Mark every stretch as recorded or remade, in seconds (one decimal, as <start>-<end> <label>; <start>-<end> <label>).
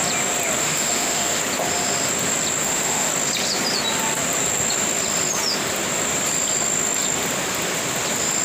0.0-0.6 recorded; 0.6-1.4 remade; 1.4-2.6 recorded; 2.6-3.1 remade; 3.1-8.4 recorded